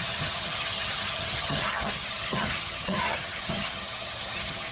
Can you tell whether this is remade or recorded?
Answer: remade